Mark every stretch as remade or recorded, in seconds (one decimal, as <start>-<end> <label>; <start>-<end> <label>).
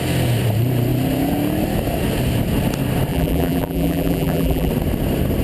0.0-3.1 recorded; 3.1-4.7 remade; 4.7-5.4 recorded